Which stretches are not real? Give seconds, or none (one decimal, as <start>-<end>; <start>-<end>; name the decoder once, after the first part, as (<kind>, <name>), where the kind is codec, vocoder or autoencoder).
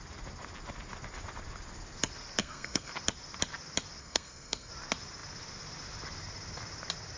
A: 2.4-2.9 (codec, SNAC); 4.0-4.7